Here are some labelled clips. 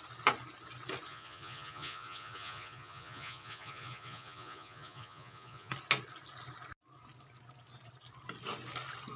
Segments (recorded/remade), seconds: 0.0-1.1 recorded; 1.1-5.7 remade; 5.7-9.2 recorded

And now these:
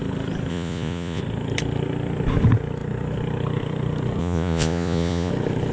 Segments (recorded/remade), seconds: 0.0-0.5 recorded; 0.5-1.2 remade; 1.2-4.2 recorded; 4.2-5.3 remade; 5.3-5.7 recorded